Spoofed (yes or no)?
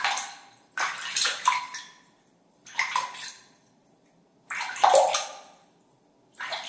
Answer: no